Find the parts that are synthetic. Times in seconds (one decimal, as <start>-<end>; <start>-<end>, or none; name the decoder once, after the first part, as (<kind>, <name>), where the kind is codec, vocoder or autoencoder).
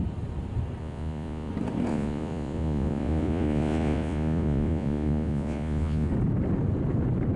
0.8-1.5 (vocoder, Vocos); 1.9-6.1